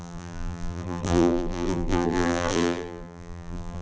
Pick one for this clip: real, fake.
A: fake